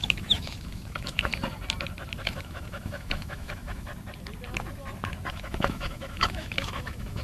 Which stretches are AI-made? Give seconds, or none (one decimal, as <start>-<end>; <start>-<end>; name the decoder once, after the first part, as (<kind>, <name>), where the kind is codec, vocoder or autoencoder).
0.0-1.3 (autoencoder, DAC-VAE); 2.2-3.9; 5.3-7.2